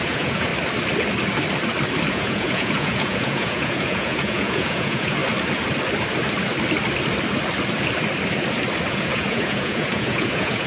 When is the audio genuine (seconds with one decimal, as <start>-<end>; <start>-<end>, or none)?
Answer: 0.5-2.1; 5.2-8.9